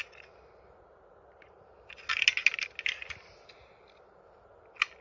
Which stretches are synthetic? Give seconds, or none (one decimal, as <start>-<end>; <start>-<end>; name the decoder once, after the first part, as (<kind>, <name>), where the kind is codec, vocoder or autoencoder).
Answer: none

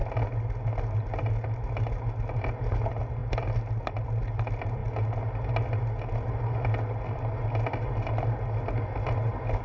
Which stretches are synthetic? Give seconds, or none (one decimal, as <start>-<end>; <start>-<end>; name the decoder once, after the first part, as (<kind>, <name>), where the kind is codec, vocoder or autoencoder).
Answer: none

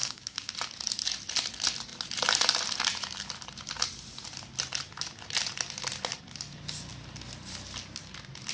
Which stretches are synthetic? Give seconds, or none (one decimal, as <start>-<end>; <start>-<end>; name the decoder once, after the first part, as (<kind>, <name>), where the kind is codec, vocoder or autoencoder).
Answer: 0.0-0.5 (codec, DAC)

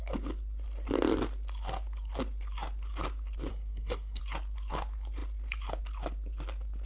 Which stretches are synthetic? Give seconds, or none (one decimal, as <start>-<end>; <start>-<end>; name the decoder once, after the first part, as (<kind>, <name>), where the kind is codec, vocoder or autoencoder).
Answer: 3.5-4.2 (codec, SNAC)

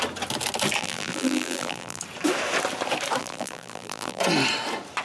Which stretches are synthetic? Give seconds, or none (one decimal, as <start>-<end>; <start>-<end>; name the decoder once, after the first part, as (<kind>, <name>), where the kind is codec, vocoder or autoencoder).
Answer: 0.8-2.0 (vocoder, BigVGAN v2); 3.2-4.2

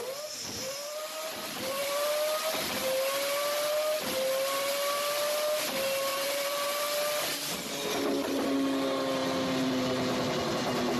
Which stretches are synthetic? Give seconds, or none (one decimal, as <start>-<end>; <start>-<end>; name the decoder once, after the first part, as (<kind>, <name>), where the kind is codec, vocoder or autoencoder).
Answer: 6.1-6.8 (vocoder, BigVGAN v2)

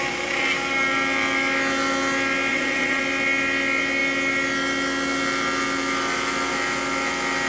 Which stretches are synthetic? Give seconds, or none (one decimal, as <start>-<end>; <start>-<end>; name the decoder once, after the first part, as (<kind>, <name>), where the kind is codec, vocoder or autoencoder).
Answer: 2.5-3.0 (vocoder, WaveNeXt)